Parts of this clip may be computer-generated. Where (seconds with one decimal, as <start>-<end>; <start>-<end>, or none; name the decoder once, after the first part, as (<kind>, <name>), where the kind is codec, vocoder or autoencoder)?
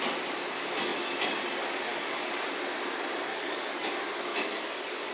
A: 1.9-2.4 (codec, DAC); 3.3-3.9; 4.3-5.1